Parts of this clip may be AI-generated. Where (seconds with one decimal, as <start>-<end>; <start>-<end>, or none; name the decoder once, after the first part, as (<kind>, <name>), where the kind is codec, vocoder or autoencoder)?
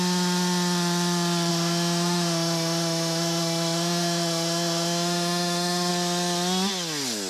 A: 1.5-5.9 (autoencoder, DAC-VAE)